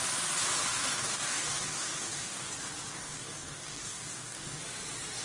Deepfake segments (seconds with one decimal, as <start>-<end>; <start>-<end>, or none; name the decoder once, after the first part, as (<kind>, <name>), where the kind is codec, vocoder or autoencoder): 0.7-2.5 (codec, DAC); 2.9-4.6